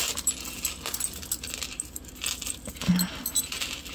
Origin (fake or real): real